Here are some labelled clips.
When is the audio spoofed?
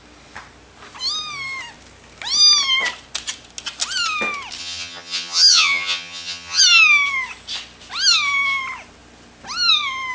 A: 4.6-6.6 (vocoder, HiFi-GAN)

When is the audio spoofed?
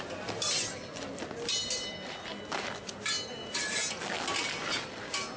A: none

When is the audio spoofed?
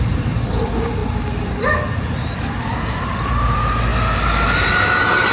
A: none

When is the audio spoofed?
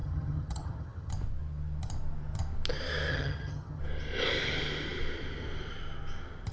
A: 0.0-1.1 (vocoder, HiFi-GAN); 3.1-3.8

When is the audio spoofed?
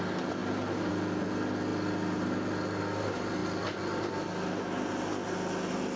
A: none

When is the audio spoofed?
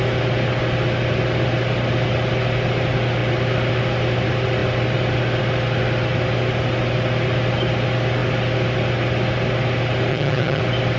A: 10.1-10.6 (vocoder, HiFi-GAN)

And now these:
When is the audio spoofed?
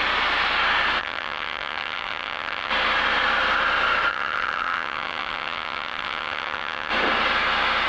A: 1.0-2.7 (vocoder, HiFi-GAN); 4.1-6.9